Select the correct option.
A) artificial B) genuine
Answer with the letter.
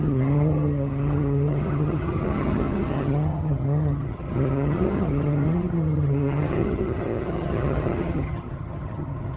A